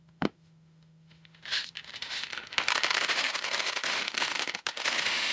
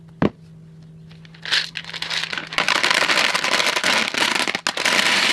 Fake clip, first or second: first